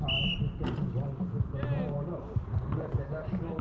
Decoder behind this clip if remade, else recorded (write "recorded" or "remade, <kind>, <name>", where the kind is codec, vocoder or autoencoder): recorded